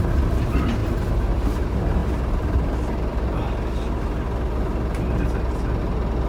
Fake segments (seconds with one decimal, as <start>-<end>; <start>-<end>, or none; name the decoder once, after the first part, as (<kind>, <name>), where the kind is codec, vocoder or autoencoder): none